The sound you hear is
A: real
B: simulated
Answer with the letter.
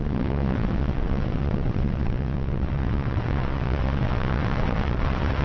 B